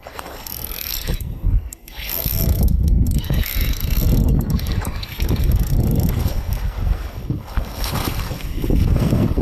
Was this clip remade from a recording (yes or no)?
yes